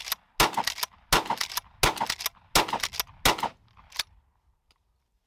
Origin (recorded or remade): recorded